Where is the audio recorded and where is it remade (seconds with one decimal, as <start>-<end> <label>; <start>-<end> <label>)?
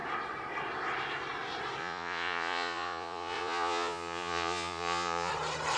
0.0-1.8 recorded; 1.8-5.3 remade; 5.3-5.8 recorded